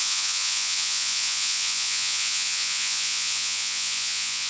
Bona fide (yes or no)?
no